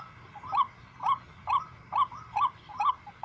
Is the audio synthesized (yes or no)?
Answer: no